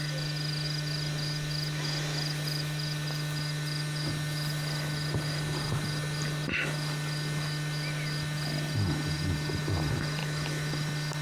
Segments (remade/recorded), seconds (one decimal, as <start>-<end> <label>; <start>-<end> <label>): 0.0-11.2 recorded